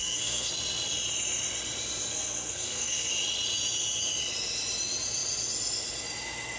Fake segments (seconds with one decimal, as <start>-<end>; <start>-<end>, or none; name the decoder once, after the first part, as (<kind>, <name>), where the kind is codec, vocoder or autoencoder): 0.0-0.5 (codec, SNAC); 2.1-3.1